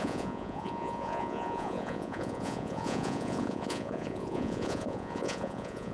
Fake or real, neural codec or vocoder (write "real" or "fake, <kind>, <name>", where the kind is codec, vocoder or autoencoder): fake, vocoder, Vocos